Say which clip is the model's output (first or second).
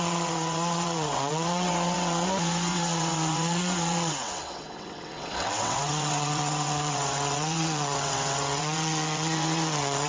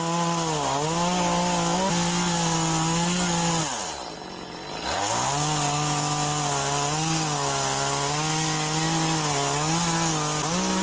first